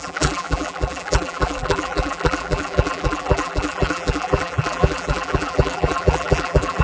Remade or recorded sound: remade